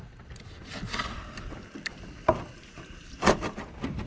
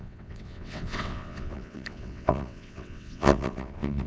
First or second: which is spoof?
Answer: second